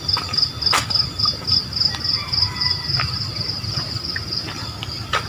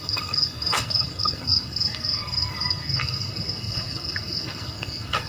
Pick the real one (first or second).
first